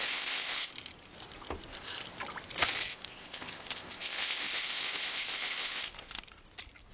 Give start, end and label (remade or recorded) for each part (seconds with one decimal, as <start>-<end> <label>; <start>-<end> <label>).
0.0-0.7 remade; 0.7-2.9 recorded; 2.9-5.9 remade; 5.9-6.9 recorded